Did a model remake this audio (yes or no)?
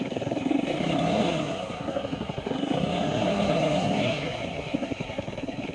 yes